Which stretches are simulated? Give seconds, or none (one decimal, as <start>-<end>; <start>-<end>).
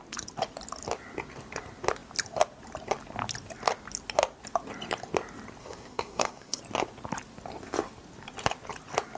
5.6-6.6